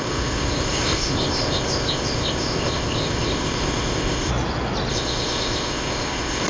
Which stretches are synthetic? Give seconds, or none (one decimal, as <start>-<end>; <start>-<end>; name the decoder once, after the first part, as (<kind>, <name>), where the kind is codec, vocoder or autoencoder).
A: 0.0-4.3 (codec, ZipCodec); 4.9-6.5